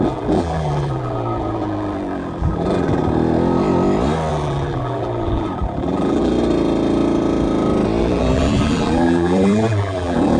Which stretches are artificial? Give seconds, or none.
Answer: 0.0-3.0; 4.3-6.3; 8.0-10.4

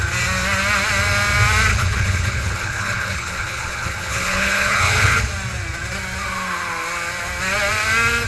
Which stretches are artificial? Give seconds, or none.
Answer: 1.7-5.3

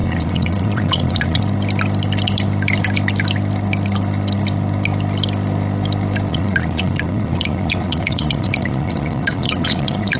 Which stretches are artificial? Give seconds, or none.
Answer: 0.0-1.4; 6.3-10.2